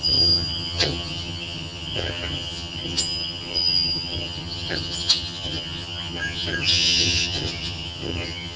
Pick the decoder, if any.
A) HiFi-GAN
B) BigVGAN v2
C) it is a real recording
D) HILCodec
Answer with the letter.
A